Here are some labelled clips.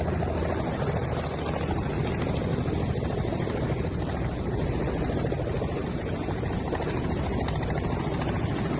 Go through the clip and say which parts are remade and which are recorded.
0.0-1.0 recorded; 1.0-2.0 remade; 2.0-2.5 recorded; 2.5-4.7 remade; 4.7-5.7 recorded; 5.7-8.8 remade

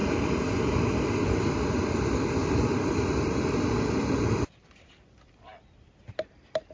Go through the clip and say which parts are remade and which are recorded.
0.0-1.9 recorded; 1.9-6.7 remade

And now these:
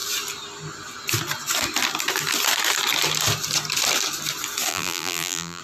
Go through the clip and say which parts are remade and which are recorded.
0.0-4.7 recorded; 4.7-5.6 remade

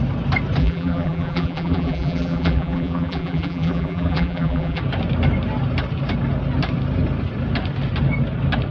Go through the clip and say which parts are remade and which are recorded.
0.0-0.6 recorded; 0.6-4.8 remade; 4.8-8.7 recorded

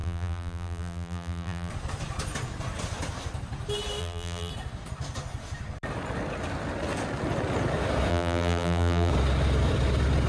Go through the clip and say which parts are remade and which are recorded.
0.0-1.7 remade; 1.7-4.0 recorded; 4.0-4.5 remade; 4.5-8.1 recorded; 8.1-9.1 remade; 9.1-10.3 recorded

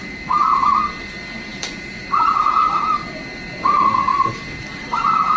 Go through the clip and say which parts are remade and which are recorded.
0.0-0.8 remade; 0.8-1.5 recorded; 1.5-3.2 remade; 3.2-4.1 recorded; 4.1-5.4 remade

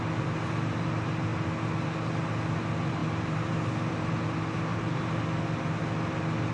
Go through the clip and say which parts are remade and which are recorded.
0.0-3.0 recorded; 3.0-4.1 remade; 4.1-4.7 recorded; 4.7-5.2 remade; 5.2-6.5 recorded

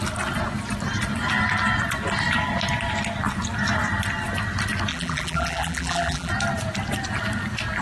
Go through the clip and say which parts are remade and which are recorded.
0.0-4.9 recorded; 4.9-6.3 remade; 6.3-7.8 recorded